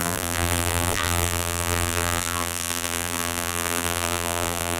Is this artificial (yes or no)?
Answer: yes